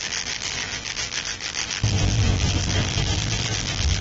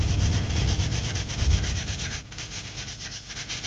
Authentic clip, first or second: second